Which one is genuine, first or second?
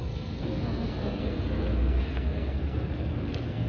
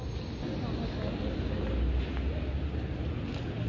second